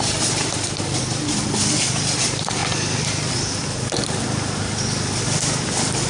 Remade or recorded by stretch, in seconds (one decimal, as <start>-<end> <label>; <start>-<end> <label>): 0.0-6.1 recorded